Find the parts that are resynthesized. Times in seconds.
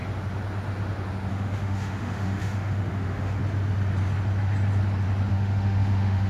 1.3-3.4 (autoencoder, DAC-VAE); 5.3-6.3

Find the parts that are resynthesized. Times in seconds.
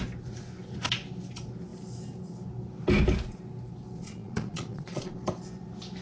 4.0-5.1 (vocoder, Vocos)